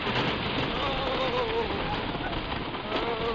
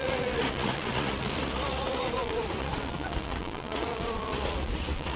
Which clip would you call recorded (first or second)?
first